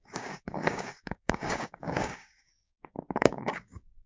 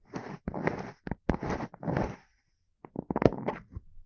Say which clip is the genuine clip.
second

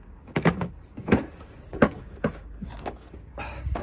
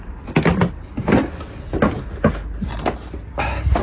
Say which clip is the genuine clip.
second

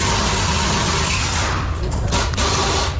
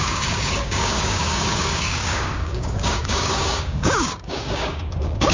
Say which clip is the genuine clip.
first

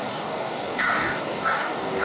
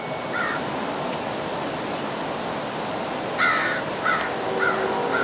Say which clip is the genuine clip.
second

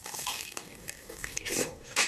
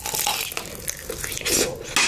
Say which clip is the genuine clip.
second